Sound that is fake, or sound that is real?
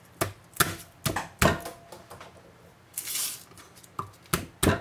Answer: real